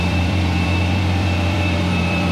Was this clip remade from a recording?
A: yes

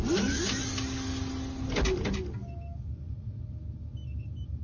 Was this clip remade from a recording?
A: no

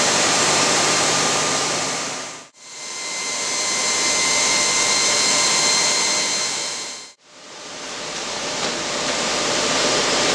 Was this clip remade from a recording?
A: yes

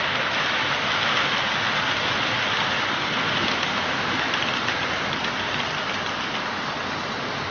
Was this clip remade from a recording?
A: no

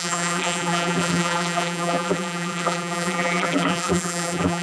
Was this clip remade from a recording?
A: yes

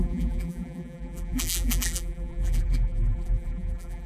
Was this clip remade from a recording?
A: yes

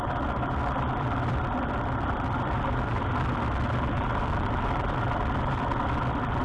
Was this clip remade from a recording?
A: yes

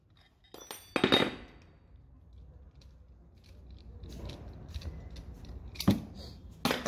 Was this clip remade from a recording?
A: no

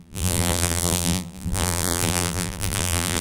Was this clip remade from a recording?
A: yes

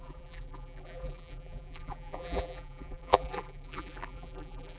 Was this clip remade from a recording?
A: yes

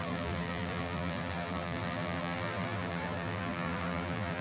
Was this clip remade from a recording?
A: yes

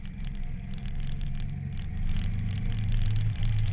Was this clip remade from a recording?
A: yes